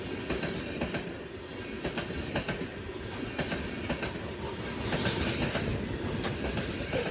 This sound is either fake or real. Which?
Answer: real